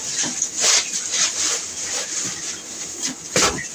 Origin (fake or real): real